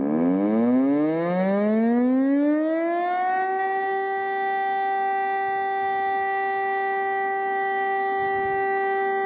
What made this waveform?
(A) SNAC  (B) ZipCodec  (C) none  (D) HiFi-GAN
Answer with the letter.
C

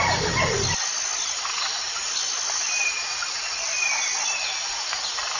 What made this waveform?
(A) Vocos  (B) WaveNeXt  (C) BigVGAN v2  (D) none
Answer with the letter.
D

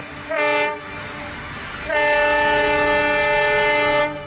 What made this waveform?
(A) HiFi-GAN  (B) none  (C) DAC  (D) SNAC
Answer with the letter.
B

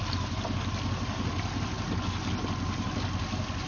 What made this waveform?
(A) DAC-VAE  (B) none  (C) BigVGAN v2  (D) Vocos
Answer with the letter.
B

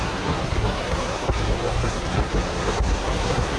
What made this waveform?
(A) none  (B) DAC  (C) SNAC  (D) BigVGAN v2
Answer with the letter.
C